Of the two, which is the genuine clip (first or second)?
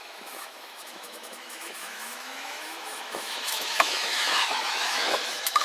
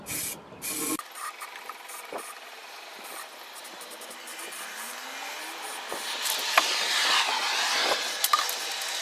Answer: second